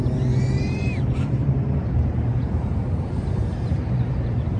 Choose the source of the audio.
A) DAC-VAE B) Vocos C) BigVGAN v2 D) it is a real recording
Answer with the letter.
C